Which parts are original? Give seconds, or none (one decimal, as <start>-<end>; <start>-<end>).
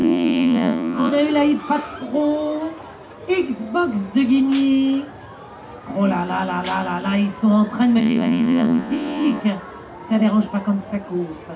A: 1.1-8.0; 9.4-11.6